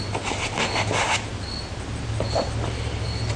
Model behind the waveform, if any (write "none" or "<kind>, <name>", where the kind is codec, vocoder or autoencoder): none